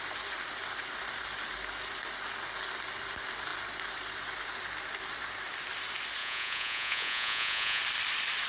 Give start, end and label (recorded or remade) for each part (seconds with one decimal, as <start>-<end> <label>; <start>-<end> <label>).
0.0-6.2 recorded; 6.2-7.8 remade; 7.8-8.5 recorded